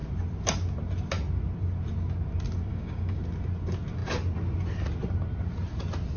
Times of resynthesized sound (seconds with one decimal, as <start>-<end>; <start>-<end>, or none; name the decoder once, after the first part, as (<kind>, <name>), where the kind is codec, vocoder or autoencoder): 2.7-3.2 (codec, DAC)